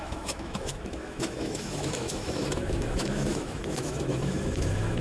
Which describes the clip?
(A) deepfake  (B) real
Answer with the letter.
A